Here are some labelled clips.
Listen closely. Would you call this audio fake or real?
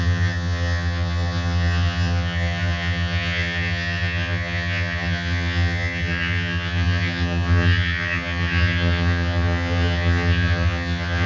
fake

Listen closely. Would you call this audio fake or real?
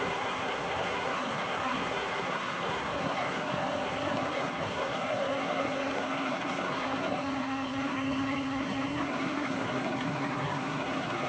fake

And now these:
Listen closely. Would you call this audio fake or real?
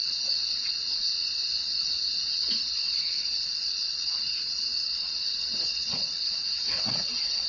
fake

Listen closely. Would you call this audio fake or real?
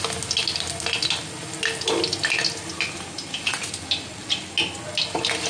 real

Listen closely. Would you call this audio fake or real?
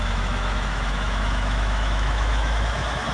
fake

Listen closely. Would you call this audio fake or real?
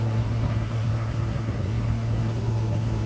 fake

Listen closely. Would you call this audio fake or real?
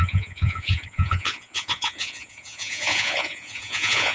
fake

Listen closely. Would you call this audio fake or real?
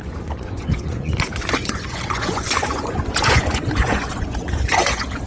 fake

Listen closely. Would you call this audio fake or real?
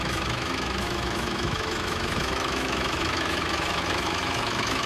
fake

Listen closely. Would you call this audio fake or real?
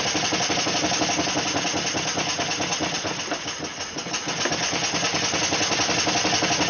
real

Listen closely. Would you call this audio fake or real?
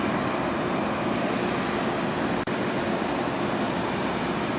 real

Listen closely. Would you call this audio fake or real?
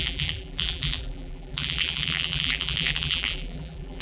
fake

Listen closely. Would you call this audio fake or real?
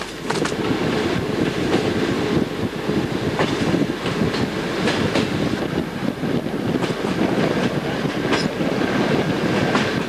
real